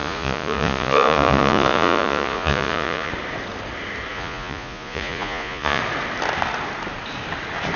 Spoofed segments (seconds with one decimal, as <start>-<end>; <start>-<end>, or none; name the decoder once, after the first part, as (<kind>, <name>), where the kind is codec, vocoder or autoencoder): 0.0-3.1 (vocoder, Vocos); 4.1-5.8